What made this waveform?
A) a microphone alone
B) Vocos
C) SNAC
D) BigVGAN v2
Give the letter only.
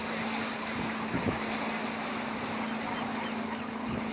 A